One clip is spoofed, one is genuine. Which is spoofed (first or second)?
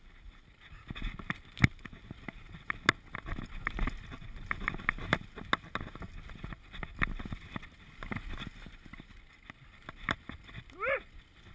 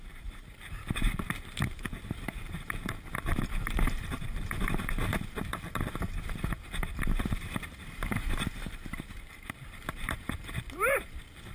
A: second